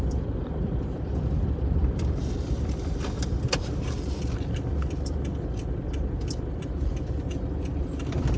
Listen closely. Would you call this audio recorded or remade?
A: remade